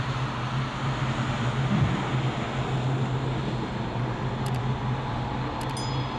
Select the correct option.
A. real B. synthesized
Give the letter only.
A